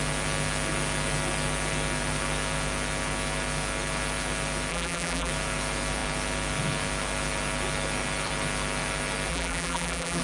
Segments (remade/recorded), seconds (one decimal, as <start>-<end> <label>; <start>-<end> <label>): 0.0-4.7 recorded; 4.7-5.3 remade; 5.3-9.3 recorded; 9.3-10.2 remade

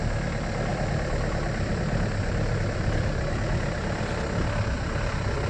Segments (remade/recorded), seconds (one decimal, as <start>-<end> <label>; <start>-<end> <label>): 0.0-0.7 recorded; 0.7-4.0 remade; 4.0-5.5 recorded

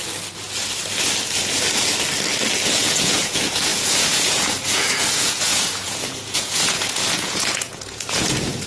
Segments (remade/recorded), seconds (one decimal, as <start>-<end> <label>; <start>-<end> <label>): 0.0-2.7 recorded; 2.7-8.7 remade

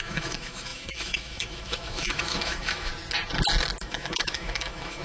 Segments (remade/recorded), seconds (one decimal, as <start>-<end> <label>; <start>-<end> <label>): 0.0-2.9 remade; 2.9-3.8 recorded; 3.8-5.0 remade

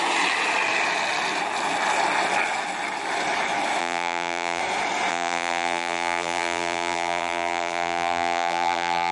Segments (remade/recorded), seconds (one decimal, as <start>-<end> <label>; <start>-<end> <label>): 0.0-3.8 recorded; 3.8-4.6 remade; 4.6-5.1 recorded; 5.1-9.1 remade

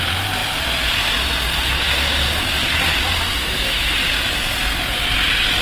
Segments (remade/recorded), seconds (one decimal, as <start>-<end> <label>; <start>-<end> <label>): 0.0-3.4 recorded; 3.4-3.9 remade; 3.9-5.6 recorded

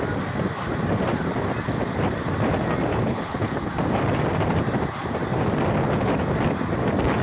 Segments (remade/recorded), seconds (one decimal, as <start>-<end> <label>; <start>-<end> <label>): 0.0-2.9 recorded; 2.9-3.7 remade; 3.7-7.2 recorded

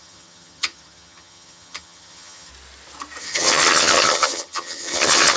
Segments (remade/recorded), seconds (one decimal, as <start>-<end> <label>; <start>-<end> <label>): 0.0-2.5 remade; 2.5-3.2 recorded; 3.2-5.4 remade